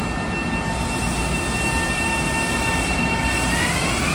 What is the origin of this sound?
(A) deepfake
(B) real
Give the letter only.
B